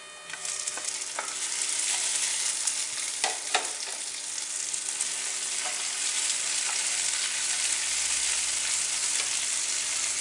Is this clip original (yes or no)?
yes